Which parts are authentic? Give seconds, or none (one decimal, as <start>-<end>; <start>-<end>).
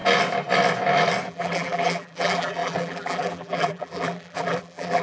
0.0-1.3